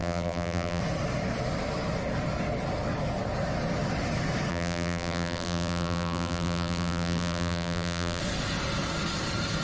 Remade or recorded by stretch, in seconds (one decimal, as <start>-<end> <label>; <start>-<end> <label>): 0.0-0.8 remade; 0.8-4.5 recorded; 4.5-8.2 remade; 8.2-9.6 recorded